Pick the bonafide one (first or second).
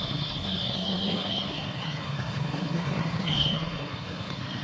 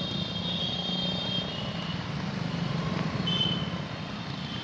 second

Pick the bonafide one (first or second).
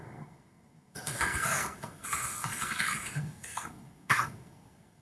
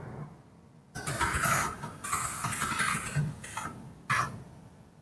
second